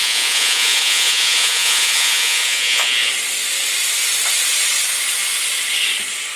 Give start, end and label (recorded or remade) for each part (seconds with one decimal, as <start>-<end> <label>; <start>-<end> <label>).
0.0-3.1 remade; 3.1-6.4 recorded